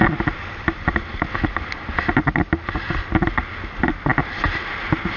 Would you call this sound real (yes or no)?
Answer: yes